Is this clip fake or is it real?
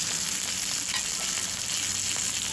real